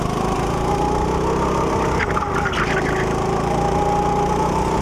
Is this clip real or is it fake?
real